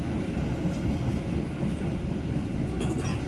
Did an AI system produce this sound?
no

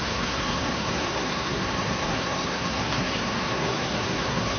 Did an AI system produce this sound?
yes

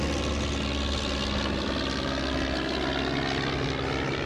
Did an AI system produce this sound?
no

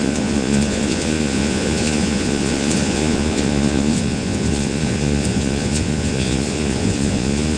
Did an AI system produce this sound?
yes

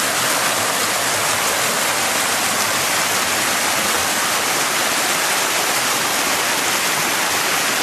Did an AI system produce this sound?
no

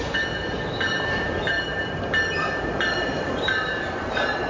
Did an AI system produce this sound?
yes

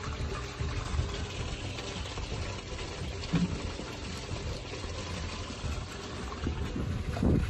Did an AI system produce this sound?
no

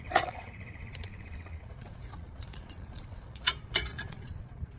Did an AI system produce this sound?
yes